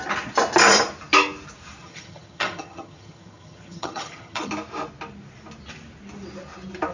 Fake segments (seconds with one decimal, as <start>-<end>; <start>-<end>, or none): 1.8-4.5